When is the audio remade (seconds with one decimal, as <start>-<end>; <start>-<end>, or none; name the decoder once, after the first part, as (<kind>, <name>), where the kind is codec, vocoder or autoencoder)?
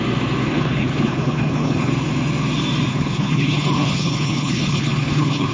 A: 0.4-1.9 (codec, HILCodec); 2.9-5.5